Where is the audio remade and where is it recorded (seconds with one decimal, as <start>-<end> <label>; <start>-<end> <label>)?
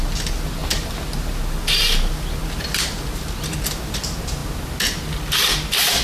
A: 0.0-6.0 recorded